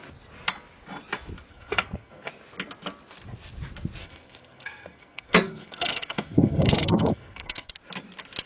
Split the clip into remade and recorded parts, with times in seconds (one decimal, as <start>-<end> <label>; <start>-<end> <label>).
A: 0.0-1.5 recorded; 1.5-2.3 remade; 2.3-4.0 recorded; 4.0-7.7 remade; 7.7-8.5 recorded